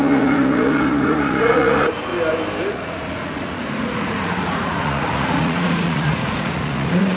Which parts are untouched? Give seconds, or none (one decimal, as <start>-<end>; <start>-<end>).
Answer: 2.1-2.7